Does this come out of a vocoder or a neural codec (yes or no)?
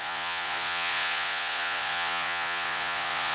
yes